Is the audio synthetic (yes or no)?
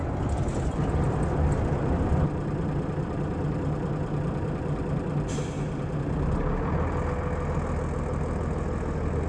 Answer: no